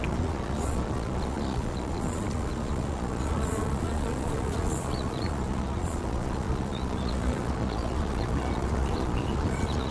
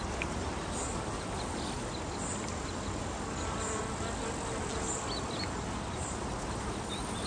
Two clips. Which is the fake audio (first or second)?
first